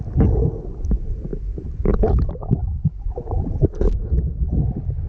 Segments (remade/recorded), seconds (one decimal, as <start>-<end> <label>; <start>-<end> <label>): 0.0-1.3 recorded; 1.3-1.8 remade; 1.8-2.6 recorded; 2.6-3.7 remade; 3.7-5.1 recorded